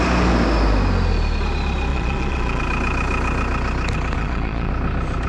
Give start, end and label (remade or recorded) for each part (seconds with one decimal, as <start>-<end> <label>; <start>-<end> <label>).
0.0-1.9 recorded; 1.9-2.6 remade; 2.6-4.2 recorded; 4.2-4.7 remade; 4.7-5.3 recorded